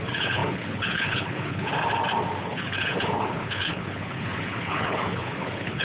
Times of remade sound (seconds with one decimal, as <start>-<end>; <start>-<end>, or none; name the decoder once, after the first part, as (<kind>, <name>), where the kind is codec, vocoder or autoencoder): 0.0-1.7 (codec, HILCodec); 2.4-5.8